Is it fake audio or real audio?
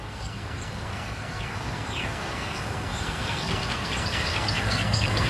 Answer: fake